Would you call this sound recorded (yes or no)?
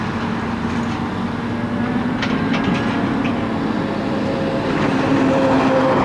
yes